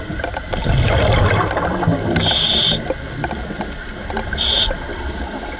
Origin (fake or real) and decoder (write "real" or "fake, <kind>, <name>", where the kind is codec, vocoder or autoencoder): real